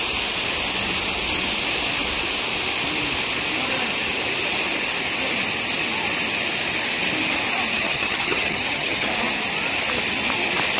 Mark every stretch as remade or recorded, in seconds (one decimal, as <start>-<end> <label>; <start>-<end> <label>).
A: 0.0-7.8 recorded; 7.8-9.1 remade; 9.1-10.8 recorded